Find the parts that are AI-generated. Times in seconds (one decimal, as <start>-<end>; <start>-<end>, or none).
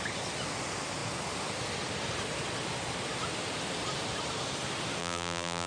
5.0-5.7